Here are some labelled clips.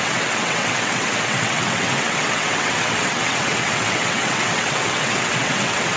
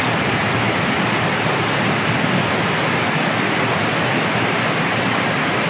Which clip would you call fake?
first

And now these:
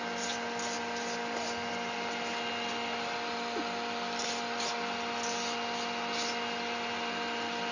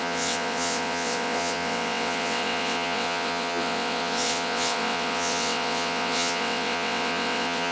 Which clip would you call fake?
second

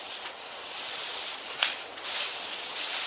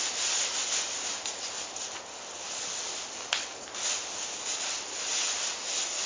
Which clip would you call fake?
first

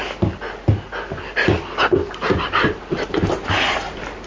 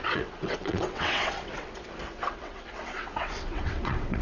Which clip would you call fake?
second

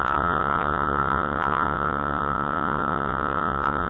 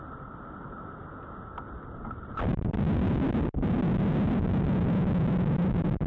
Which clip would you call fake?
first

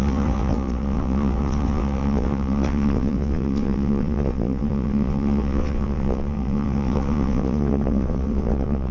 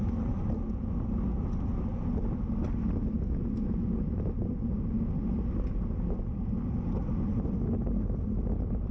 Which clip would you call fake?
first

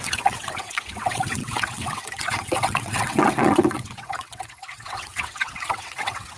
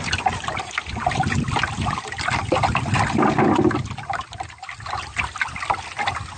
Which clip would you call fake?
first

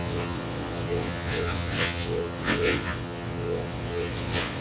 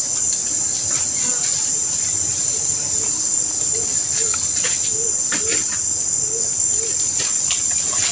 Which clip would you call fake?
first